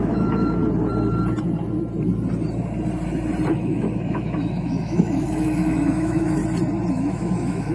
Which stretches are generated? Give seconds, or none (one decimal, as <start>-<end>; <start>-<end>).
0.0-0.6; 3.5-6.4; 6.9-7.7